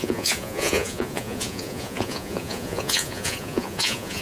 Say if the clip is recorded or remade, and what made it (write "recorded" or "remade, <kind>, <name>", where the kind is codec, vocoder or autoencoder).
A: remade, vocoder, Vocos